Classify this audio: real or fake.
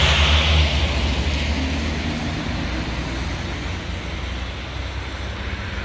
real